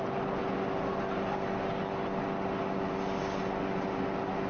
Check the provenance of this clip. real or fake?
real